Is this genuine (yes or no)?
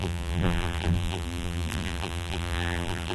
no